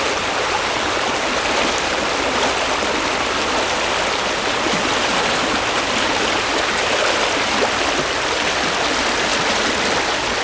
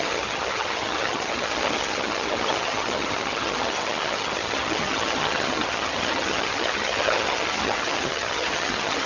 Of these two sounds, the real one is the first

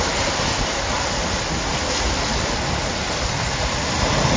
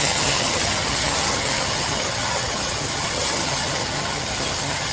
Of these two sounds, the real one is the first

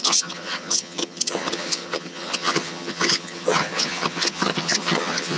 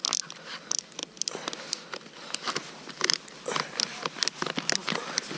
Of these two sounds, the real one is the second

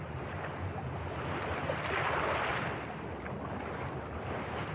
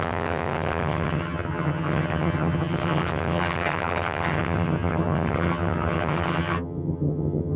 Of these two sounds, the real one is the first